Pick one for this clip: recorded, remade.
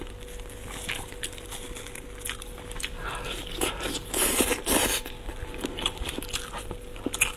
recorded